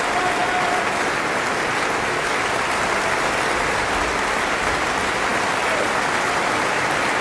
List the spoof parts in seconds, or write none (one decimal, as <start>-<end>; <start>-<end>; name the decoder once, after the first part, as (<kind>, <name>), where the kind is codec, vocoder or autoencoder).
none